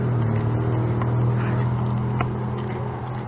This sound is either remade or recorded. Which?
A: recorded